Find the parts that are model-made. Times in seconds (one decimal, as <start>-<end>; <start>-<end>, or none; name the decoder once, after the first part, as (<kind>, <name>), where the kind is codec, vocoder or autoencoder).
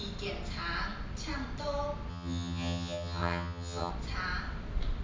2.1-3.9 (vocoder, HiFi-GAN)